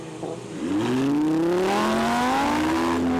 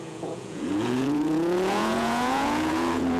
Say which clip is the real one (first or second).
first